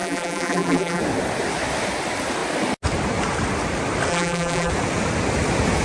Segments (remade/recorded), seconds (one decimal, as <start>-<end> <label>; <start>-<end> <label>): 0.0-1.0 remade; 1.0-4.1 recorded; 4.1-4.7 remade; 4.7-5.8 recorded